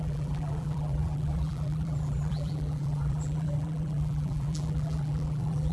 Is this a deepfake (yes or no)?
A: yes